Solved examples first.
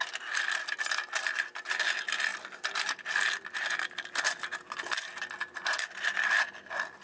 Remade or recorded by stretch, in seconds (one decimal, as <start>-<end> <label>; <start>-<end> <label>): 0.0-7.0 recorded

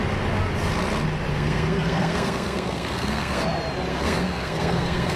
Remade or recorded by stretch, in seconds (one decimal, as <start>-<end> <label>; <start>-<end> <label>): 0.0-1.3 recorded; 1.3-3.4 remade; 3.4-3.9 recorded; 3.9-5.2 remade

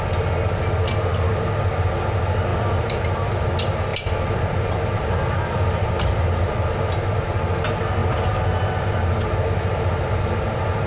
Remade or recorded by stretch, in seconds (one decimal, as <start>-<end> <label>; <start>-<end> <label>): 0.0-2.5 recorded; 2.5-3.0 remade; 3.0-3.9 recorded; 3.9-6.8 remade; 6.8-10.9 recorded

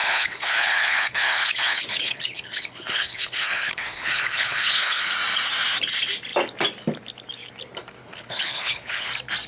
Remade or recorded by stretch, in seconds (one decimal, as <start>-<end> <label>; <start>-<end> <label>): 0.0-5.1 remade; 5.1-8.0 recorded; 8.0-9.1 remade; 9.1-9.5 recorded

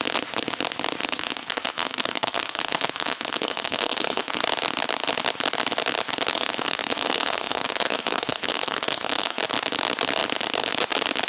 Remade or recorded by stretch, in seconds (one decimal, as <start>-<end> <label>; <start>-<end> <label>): 0.0-1.0 recorded; 1.0-4.4 remade; 4.4-6.3 recorded; 6.3-9.4 remade; 9.4-11.3 recorded